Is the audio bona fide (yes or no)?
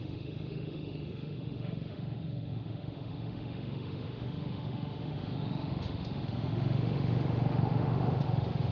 no